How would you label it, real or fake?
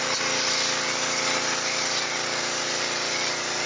real